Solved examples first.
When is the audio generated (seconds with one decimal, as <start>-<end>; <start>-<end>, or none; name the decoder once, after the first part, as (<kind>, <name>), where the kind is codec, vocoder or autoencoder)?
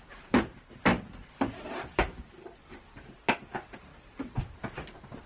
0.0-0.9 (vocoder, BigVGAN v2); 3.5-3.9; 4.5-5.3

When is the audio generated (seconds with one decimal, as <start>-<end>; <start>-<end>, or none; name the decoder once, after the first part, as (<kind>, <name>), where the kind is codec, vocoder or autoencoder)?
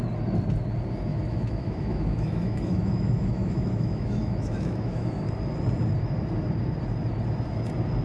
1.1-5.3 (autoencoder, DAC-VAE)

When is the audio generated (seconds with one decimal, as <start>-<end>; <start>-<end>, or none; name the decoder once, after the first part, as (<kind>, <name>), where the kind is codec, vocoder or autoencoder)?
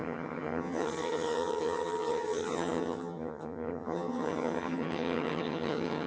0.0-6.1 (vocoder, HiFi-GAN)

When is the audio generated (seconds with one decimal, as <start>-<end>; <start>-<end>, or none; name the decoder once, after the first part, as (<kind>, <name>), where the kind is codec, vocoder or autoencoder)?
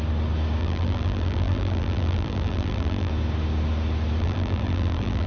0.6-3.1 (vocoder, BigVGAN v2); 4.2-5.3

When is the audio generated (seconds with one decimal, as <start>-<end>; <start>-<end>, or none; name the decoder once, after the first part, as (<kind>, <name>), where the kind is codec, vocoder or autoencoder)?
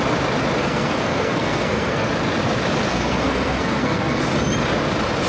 0.6-2.1 (codec, SNAC); 2.9-4.2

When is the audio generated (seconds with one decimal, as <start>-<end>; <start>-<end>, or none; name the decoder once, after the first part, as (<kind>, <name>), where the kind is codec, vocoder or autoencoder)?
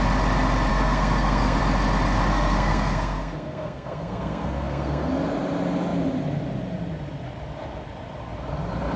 0.7-1.6 (codec, SNAC); 2.3-5.1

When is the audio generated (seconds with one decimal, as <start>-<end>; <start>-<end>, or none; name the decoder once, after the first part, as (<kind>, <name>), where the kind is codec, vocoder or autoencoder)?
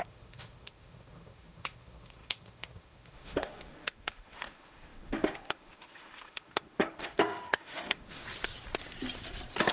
0.0-8.2 (autoencoder, DAC-VAE)